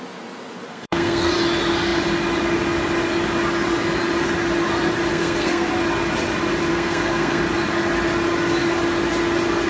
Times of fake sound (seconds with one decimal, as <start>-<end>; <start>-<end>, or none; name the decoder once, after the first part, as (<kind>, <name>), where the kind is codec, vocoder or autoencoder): 0.7-1.3 (codec, SNAC); 5.1-5.7; 6.7-7.4